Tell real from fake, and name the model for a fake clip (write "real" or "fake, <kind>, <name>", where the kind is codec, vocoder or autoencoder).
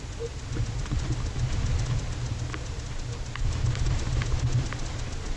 real